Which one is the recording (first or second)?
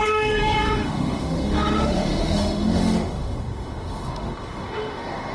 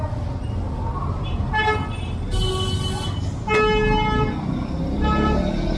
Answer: second